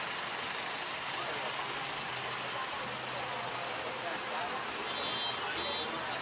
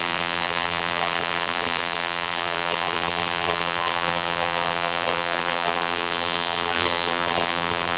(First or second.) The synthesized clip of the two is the second